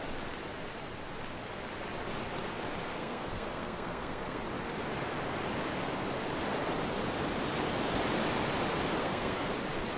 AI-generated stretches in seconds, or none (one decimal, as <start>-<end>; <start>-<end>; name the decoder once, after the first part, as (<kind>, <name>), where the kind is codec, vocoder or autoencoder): 2.9-4.4 (codec, SNAC); 9.0-9.5